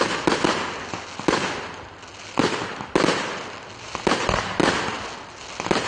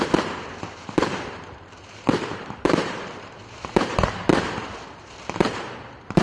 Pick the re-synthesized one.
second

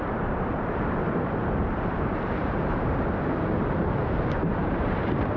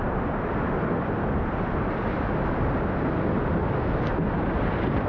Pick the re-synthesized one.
first